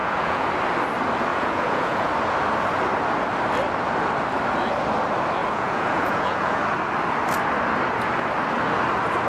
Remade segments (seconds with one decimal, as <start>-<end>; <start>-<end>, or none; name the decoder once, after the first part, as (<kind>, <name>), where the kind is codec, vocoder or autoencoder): 0.0-0.5 (vocoder, Vocos); 1.3-2.1; 5.4-6.6